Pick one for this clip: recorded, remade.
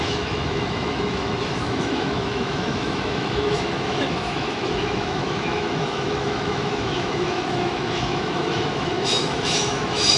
remade